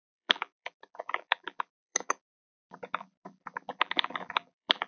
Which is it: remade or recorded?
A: remade